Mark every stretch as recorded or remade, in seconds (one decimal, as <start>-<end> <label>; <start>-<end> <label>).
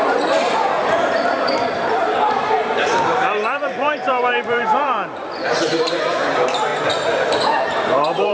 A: 0.0-6.7 remade; 6.7-7.6 recorded; 7.6-8.3 remade